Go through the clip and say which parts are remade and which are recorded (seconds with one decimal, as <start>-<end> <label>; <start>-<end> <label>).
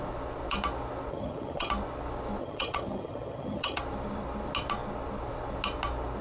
0.0-1.1 recorded; 1.1-1.7 remade; 1.7-2.4 recorded; 2.4-3.8 remade; 3.8-6.2 recorded